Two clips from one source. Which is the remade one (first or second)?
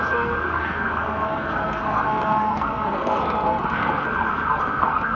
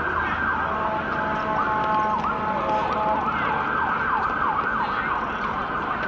first